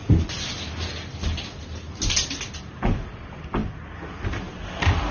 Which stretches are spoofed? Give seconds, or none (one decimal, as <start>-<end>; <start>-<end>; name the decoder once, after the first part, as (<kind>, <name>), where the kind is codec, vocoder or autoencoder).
none